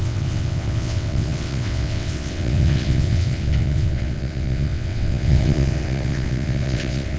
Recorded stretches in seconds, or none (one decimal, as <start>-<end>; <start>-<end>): none

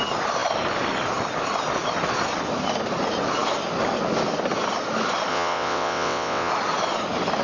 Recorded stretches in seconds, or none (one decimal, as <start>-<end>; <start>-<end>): 0.0-5.3; 6.5-7.4

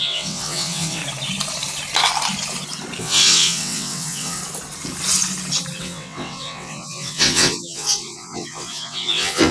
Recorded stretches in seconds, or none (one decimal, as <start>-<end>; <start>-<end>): 1.0-3.0; 4.4-5.8

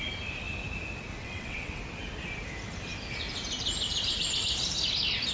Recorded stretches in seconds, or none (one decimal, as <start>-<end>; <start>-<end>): 0.0-1.2; 1.8-5.3

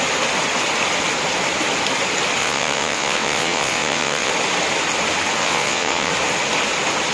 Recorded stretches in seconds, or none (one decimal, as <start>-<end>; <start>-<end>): 0.0-2.4; 4.3-5.4; 6.1-7.1

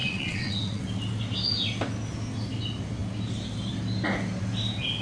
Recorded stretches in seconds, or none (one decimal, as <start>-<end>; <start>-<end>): 0.8-5.0

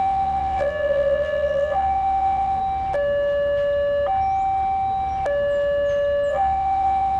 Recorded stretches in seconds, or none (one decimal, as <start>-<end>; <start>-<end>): 2.6-6.3

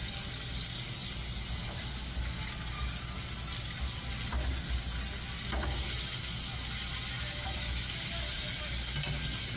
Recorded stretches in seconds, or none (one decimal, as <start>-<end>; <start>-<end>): 0.0-9.6